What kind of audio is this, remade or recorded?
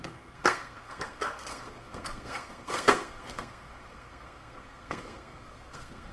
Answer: remade